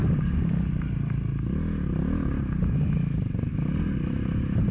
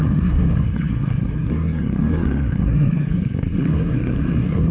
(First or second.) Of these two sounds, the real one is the first